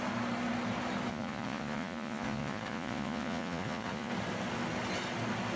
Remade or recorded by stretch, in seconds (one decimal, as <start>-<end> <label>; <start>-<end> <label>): 0.0-1.1 recorded; 1.1-4.1 remade; 4.1-5.6 recorded